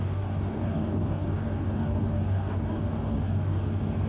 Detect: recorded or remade remade